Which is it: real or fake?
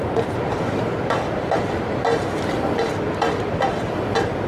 real